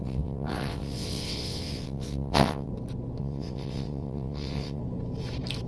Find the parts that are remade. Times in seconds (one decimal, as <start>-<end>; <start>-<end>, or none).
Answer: 0.0-2.7; 3.2-4.8